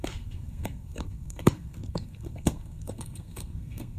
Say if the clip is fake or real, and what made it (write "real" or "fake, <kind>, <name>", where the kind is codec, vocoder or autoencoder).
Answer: fake, codec, SNAC